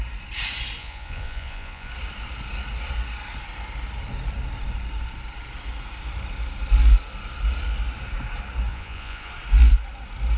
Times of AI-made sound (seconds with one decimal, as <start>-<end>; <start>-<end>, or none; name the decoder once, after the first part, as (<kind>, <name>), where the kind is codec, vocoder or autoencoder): 0.8-1.9 (vocoder, Vocos); 8.7-9.3